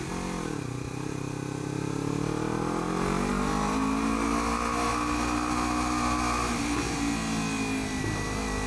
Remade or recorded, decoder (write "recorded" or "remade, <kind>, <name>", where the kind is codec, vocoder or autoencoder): recorded